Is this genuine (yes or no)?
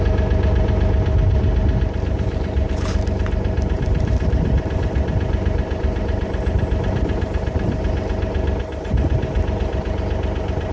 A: yes